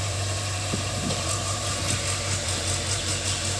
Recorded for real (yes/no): no